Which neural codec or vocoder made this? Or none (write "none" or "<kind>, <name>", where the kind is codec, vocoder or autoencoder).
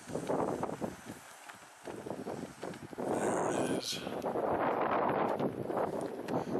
none